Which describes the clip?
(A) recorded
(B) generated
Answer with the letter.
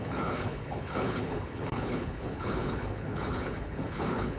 B